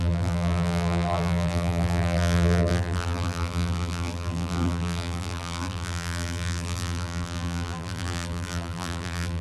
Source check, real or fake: fake